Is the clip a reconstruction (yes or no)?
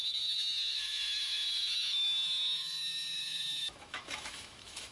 yes